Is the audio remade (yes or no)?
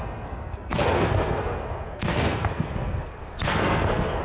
yes